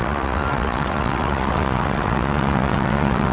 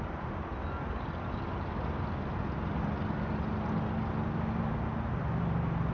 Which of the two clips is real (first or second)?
second